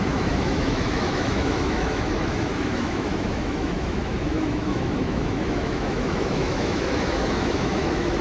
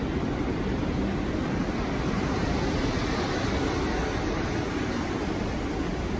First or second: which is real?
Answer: second